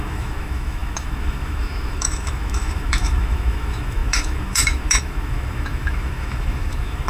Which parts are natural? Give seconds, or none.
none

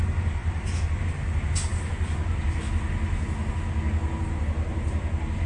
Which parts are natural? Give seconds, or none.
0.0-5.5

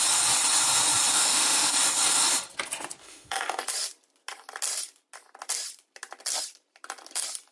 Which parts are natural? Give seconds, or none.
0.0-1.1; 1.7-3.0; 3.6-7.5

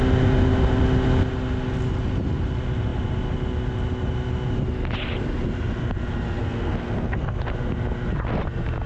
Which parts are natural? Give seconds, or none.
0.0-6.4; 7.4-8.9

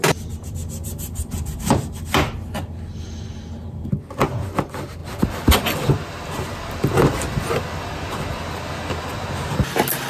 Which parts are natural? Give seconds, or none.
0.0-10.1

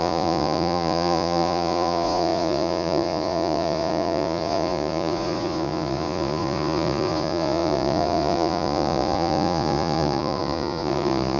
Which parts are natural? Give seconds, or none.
none

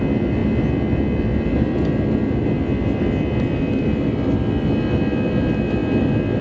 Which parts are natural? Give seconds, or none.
0.0-6.4